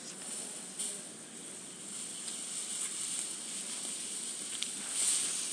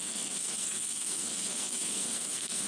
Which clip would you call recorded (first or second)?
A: first